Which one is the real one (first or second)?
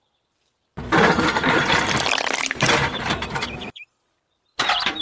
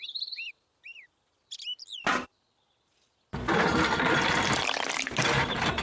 second